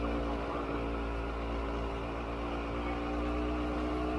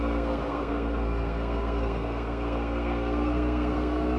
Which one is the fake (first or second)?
second